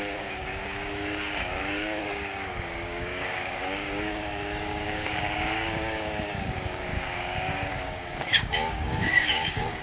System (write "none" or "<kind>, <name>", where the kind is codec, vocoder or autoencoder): codec, DAC